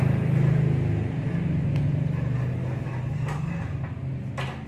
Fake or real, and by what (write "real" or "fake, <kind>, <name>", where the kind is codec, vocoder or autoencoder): real